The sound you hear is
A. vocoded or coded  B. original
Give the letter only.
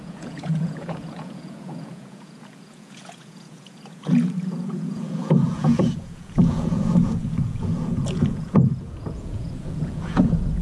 A